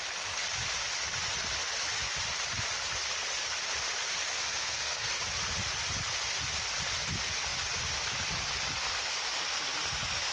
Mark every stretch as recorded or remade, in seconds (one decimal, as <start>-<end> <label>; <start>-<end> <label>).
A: 0.0-4.3 recorded; 4.3-5.1 remade; 5.1-10.3 recorded